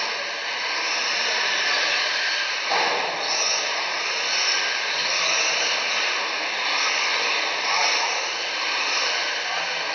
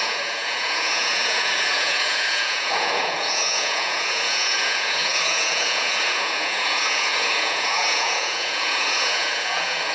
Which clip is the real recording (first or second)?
first